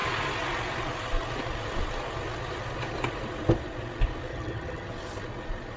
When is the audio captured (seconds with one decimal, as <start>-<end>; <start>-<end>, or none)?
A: 0.0-4.3; 4.9-5.8